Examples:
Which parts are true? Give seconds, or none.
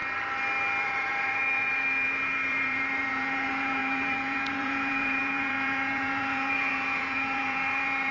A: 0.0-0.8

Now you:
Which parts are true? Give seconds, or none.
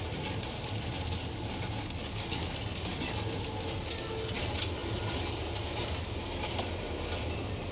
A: 0.0-2.0; 3.1-7.7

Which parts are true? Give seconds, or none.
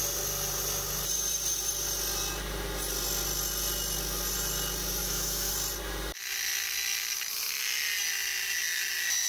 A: 0.0-5.0; 5.5-9.3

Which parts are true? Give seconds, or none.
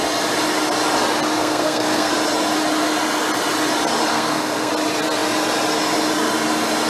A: 0.0-1.4; 2.1-4.1; 4.7-6.9